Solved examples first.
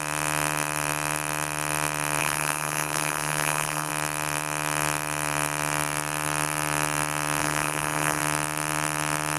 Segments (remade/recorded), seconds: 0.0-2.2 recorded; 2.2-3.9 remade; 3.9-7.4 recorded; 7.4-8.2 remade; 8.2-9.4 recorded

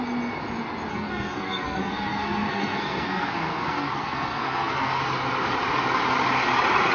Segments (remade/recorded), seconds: 0.0-0.9 recorded; 0.9-5.0 remade; 5.0-6.9 recorded

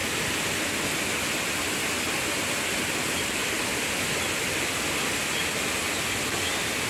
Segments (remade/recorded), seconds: 0.0-6.9 recorded

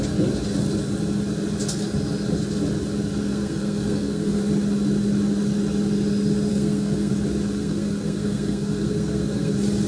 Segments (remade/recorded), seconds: 0.0-3.2 recorded; 3.2-4.4 remade; 4.4-6.5 recorded; 6.5-7.1 remade; 7.1-7.6 recorded; 7.6-9.5 remade; 9.5-9.9 recorded